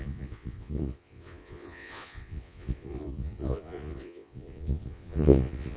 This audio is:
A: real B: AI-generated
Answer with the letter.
B